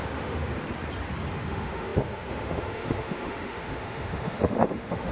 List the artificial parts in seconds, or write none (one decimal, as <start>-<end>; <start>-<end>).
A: 0.0-0.5; 1.3-5.1